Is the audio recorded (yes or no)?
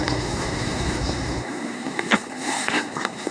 no